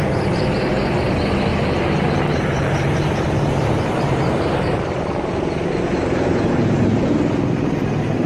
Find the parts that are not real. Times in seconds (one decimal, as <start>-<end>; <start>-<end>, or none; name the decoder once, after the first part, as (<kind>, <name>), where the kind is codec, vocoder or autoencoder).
0.0-1.5 (vocoder, BigVGAN v2); 2.2-8.3